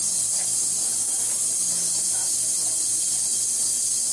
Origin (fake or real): real